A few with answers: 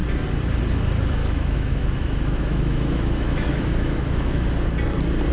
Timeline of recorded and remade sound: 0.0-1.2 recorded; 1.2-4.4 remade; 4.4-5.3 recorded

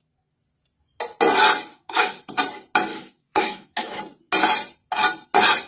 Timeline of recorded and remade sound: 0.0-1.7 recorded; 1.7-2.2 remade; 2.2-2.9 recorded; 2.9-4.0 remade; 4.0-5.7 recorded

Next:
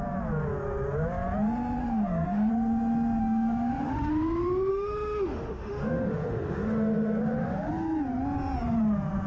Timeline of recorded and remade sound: 0.0-1.8 recorded; 1.8-2.5 remade; 2.5-3.2 recorded; 3.2-4.1 remade; 4.1-4.7 recorded; 4.7-7.2 remade; 7.2-9.3 recorded

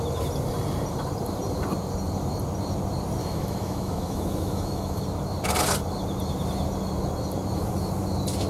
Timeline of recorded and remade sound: 0.0-3.2 recorded; 3.2-5.0 remade; 5.0-8.5 recorded